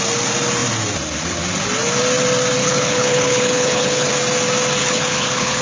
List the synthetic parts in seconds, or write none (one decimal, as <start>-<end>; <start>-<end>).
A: 2.6-4.1; 4.8-5.6